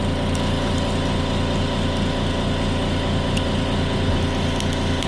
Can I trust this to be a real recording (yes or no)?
yes